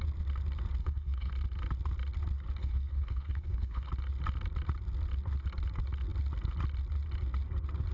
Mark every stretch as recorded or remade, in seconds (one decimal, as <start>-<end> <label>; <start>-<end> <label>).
0.0-0.8 recorded; 0.8-1.3 remade; 1.3-2.6 recorded; 2.6-3.9 remade; 3.9-7.9 recorded